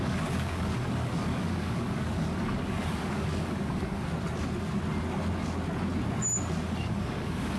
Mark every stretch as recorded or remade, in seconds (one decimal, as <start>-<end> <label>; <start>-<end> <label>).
0.0-4.1 remade; 4.1-6.7 recorded; 6.7-7.6 remade